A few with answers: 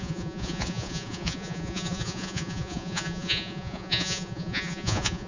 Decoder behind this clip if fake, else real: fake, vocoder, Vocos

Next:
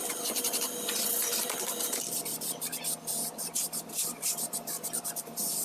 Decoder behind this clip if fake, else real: fake, vocoder, BigVGAN v2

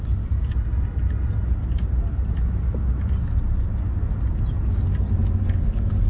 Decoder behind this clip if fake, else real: real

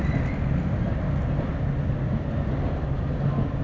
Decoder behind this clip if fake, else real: real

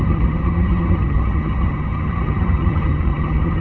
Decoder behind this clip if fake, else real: fake, vocoder, HiFi-GAN